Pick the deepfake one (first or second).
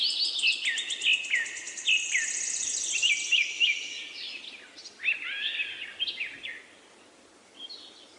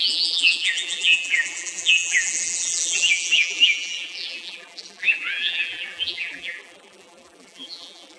second